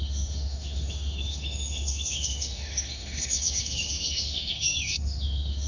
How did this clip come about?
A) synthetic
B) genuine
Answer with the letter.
A